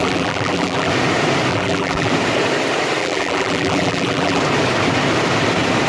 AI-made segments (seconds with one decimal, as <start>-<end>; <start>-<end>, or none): 0.0-0.9; 1.5-2.1; 3.0-4.4